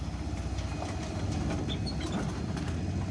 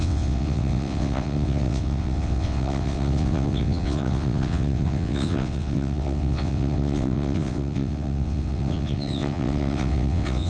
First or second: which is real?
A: first